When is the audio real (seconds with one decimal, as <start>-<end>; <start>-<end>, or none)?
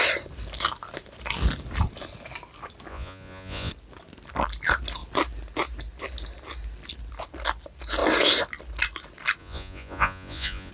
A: 0.0-2.9; 3.7-9.4